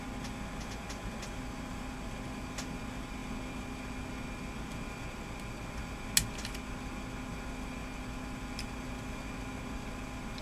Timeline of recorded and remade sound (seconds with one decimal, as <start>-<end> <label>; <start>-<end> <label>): 0.0-10.4 recorded

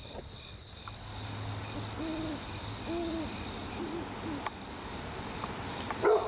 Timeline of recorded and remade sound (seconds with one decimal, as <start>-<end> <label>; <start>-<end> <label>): 0.0-6.3 recorded